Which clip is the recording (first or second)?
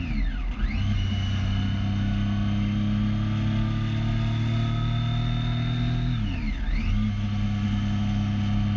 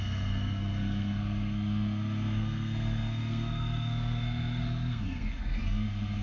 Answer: first